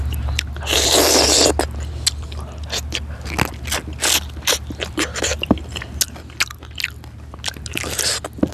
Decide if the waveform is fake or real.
real